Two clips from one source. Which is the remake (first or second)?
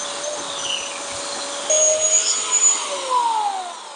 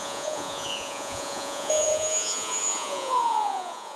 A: second